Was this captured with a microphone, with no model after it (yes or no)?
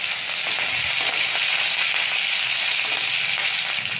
yes